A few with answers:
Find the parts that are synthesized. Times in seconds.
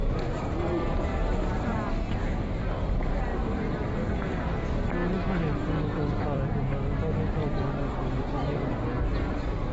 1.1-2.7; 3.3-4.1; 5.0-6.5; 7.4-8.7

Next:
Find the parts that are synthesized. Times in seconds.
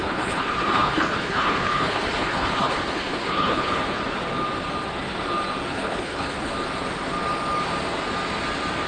0.0-4.0; 5.7-6.5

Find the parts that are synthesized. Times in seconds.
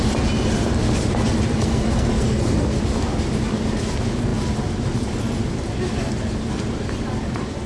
1.5-2.8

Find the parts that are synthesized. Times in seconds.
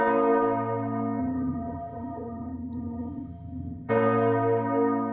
1.2-3.9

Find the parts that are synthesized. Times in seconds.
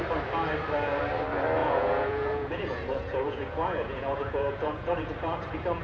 1.6-5.1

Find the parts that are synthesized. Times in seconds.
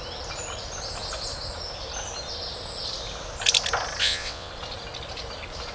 4.0-4.5